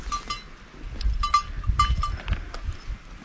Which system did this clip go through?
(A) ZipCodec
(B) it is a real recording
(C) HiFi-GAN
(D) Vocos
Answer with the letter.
B